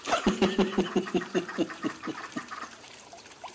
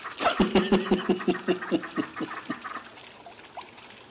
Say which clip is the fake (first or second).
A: first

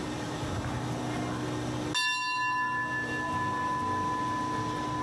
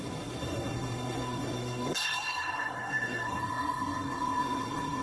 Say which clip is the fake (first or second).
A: second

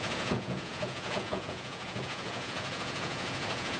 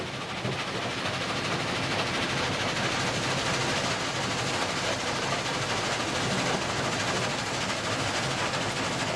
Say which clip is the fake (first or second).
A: first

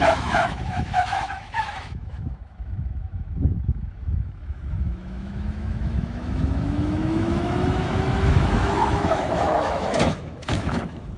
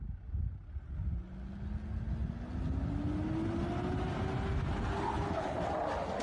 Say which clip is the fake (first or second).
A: first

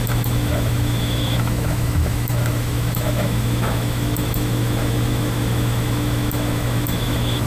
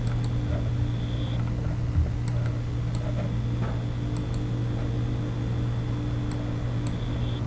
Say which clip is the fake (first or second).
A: first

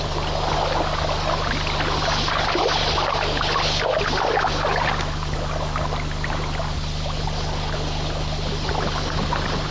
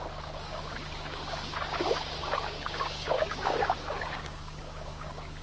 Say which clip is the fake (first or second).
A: second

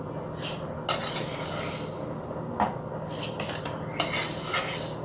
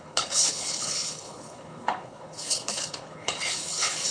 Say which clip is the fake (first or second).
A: second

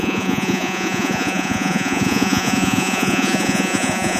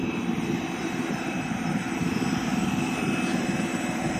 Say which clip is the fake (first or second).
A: first